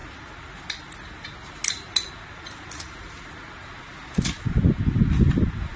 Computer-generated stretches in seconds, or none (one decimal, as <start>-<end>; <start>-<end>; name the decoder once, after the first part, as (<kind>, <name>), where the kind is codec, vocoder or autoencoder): none